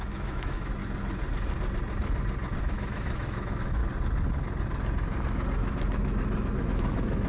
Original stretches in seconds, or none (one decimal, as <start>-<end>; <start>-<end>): 0.8-2.6; 3.8-6.6